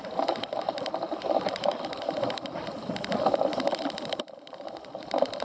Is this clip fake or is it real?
fake